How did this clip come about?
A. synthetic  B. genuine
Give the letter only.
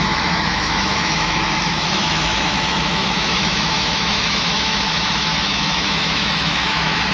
A